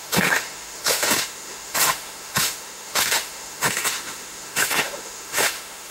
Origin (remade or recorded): remade